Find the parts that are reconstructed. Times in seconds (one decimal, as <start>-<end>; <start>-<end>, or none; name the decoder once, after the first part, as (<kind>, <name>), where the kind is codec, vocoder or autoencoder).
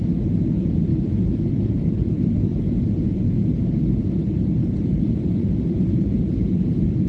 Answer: 0.9-1.9 (vocoder, BigVGAN v2); 4.6-6.6